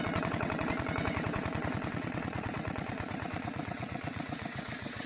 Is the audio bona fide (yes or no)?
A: no